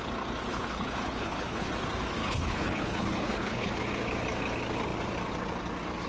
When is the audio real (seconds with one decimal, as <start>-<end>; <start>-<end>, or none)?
0.0-0.5; 1.7-2.2; 3.7-6.1